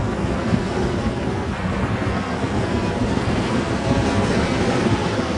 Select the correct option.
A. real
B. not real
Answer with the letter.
B